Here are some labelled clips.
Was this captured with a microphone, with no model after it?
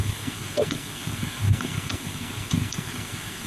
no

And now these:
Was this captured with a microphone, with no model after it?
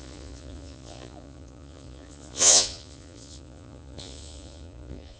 no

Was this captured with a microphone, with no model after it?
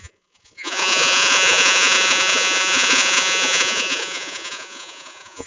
no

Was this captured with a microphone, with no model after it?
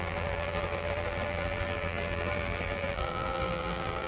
no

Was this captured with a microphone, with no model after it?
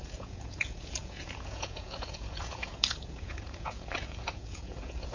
no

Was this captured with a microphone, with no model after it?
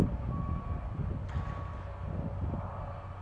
yes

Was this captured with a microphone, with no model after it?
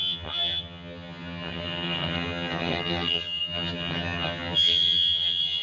no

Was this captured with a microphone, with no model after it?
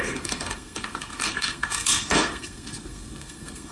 no